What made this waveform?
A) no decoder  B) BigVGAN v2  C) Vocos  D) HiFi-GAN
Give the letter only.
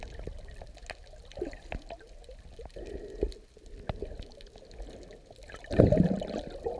A